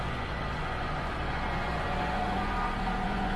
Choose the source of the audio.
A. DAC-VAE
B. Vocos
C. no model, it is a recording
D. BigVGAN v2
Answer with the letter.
B